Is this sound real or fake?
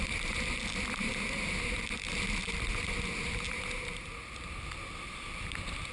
real